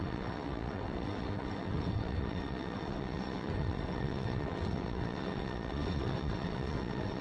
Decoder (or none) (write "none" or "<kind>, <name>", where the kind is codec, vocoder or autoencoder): vocoder, WaveNeXt